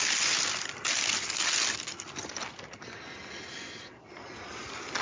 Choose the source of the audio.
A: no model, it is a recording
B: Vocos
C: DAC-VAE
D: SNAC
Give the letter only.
A